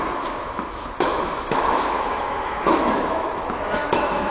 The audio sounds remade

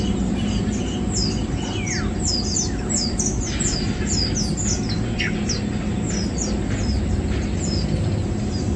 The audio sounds recorded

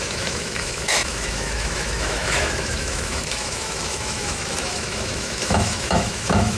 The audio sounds remade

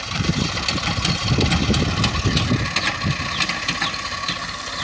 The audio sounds recorded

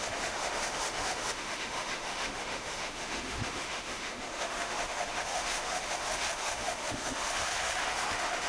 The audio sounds remade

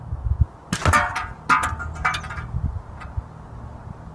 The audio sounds recorded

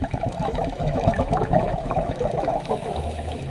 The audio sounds remade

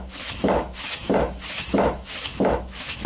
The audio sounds remade